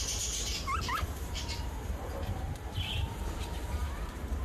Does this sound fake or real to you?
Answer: fake